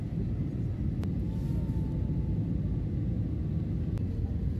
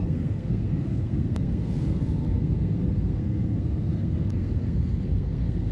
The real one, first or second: first